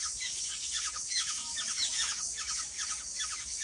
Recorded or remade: remade